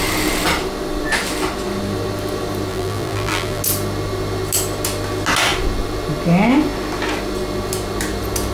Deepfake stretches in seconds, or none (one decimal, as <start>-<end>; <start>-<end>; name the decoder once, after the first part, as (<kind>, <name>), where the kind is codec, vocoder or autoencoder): 2.7-3.6 (vocoder, BigVGAN v2)